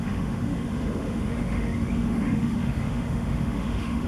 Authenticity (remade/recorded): remade